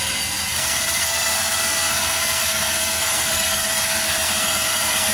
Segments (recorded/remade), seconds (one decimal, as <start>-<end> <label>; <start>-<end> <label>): 0.0-5.1 remade